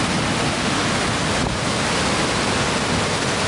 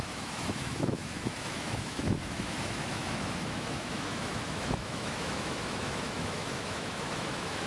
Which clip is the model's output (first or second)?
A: second